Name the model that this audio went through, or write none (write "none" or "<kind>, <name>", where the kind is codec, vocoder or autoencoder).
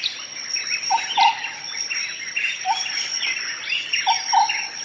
none